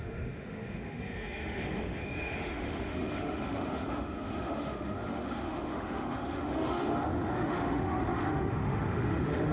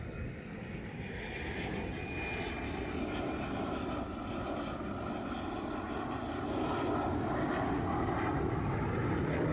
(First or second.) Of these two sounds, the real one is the second